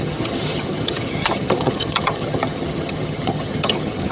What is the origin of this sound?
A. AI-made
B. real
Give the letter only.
A